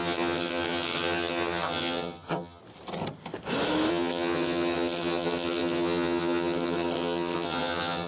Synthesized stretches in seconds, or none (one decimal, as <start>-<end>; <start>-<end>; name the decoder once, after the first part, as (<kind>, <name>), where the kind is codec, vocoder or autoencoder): 0.0-2.6 (vocoder, HiFi-GAN); 3.9-8.1